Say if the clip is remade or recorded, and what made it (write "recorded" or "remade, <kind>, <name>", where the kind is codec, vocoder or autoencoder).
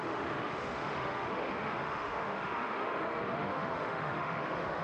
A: remade, autoencoder, DAC-VAE